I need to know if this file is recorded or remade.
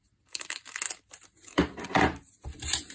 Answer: recorded